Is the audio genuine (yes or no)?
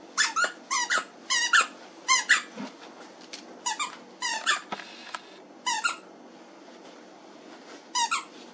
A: yes